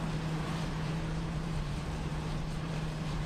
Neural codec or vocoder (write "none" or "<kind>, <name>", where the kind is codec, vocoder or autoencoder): vocoder, BigVGAN v2